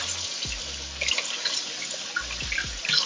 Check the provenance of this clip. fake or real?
real